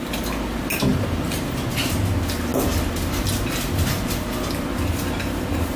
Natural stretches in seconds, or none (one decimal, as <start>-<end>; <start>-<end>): 0.0-0.9; 1.6-5.8